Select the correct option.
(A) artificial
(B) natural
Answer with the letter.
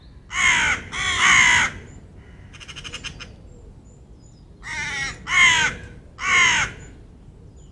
B